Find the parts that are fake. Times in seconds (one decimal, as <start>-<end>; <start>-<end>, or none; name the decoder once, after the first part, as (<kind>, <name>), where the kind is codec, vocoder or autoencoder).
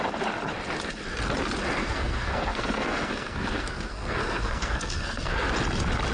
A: 1.8-5.5 (codec, SNAC)